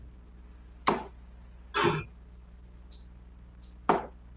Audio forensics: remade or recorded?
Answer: recorded